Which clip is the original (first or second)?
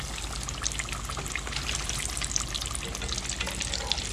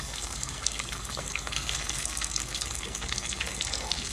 first